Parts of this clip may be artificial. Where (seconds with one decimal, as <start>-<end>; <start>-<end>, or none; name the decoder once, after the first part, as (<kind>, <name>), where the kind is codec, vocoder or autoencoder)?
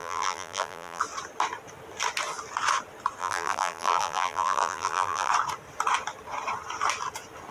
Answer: 0.0-1.0 (vocoder, BigVGAN v2); 3.2-5.3